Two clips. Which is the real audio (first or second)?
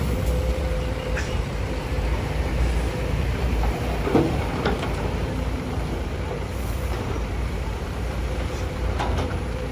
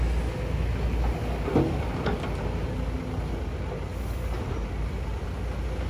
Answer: second